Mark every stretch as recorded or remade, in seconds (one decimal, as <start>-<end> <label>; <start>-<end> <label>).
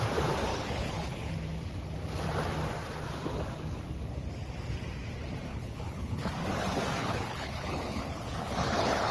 0.0-0.5 recorded; 0.5-1.3 remade; 1.3-5.5 recorded; 5.5-6.3 remade; 6.3-7.0 recorded; 7.0-9.1 remade